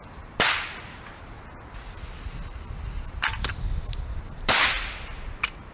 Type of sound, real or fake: real